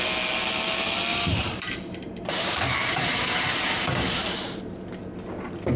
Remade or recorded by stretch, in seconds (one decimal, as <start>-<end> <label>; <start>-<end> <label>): 0.0-1.1 recorded; 1.1-4.6 remade; 4.6-5.8 recorded